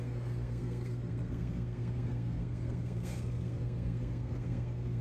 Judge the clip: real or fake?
fake